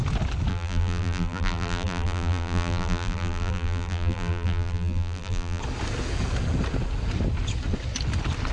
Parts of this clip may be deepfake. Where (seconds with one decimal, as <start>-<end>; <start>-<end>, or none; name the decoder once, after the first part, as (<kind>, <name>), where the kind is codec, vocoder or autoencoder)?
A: 0.5-5.6 (vocoder, BigVGAN v2)